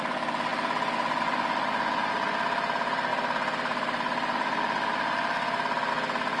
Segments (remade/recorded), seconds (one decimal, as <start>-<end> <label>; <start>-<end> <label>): 0.0-6.4 recorded